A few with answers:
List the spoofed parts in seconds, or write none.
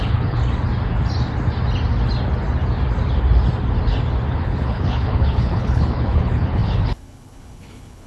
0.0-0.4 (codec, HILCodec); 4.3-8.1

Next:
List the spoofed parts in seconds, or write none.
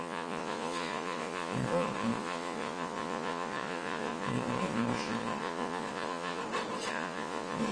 0.0-6.4 (vocoder, Vocos); 6.9-7.7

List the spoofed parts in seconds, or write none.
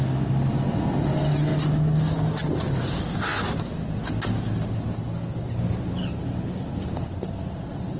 6.0-6.8 (codec, HILCodec)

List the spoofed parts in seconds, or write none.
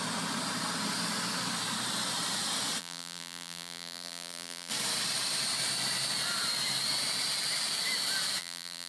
2.8-4.7 (vocoder, BigVGAN v2); 8.4-8.9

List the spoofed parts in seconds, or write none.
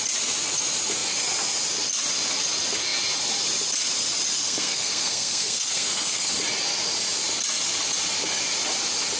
4.4-6.3 (codec, SNAC)